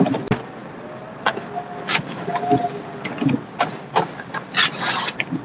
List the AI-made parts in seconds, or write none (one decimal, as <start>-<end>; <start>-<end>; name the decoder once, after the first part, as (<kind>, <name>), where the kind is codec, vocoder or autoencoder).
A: none